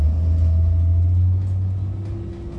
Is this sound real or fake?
real